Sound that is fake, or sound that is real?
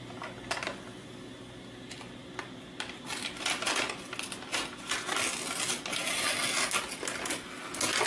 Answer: real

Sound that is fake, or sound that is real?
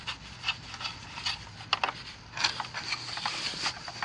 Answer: real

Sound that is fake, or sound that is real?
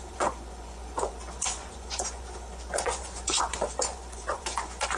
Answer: fake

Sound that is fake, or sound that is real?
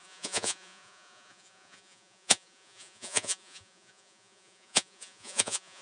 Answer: fake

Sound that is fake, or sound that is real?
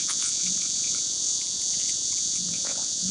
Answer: fake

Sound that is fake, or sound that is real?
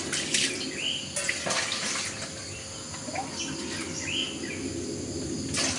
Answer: real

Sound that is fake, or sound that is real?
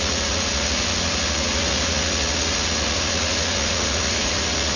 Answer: fake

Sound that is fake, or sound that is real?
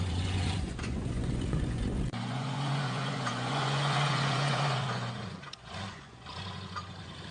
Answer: fake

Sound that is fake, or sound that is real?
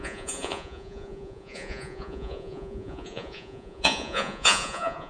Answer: fake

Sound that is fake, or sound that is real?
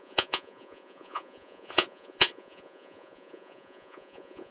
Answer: fake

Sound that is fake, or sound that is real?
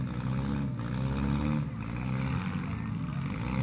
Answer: real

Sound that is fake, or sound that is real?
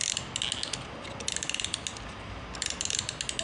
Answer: real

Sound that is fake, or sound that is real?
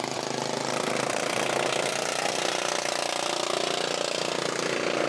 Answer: real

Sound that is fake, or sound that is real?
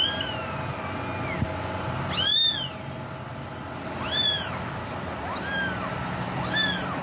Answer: real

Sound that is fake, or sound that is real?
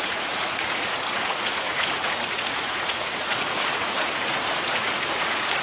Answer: fake